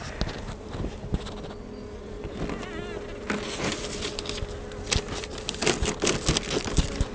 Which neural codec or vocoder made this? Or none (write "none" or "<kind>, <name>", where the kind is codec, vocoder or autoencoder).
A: none